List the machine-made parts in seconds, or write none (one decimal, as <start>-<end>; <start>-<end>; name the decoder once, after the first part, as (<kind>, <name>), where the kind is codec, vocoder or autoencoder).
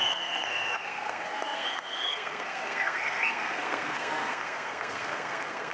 0.0-5.7 (codec, SNAC)